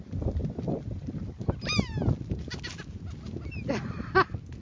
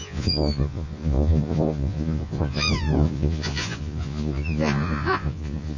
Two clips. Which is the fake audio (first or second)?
second